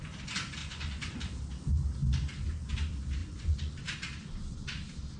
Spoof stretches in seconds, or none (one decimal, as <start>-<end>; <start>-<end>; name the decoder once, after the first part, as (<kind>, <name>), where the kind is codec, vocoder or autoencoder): 0.6-1.2 (vocoder, Vocos); 3.2-3.8